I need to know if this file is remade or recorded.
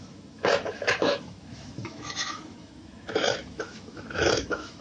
remade